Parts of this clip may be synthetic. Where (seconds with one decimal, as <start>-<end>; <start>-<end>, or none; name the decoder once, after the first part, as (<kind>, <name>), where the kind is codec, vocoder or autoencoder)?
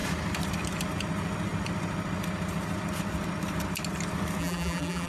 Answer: 4.4-5.1 (vocoder, BigVGAN v2)